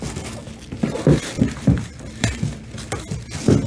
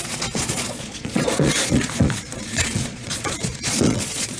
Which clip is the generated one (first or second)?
second